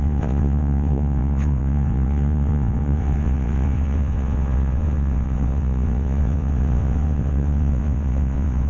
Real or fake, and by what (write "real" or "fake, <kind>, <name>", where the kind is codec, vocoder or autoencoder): fake, vocoder, WaveNeXt